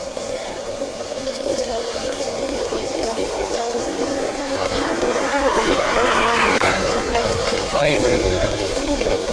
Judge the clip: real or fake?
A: fake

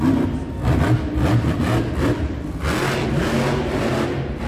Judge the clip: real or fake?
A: real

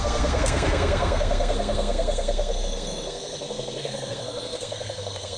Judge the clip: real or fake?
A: fake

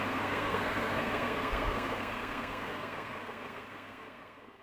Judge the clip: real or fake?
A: fake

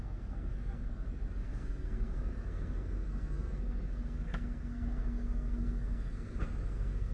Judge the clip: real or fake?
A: fake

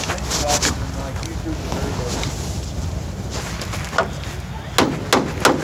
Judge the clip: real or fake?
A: real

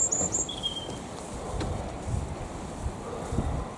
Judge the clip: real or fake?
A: real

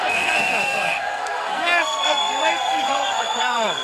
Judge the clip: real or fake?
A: fake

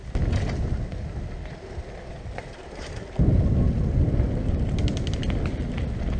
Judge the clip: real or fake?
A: real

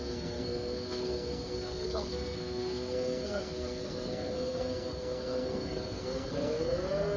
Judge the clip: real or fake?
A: fake